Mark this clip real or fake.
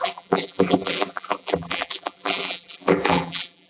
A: fake